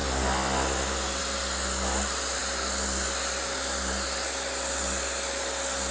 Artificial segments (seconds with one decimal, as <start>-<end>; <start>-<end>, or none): none